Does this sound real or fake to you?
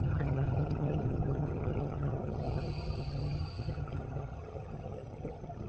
fake